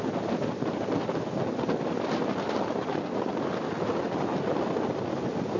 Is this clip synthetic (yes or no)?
no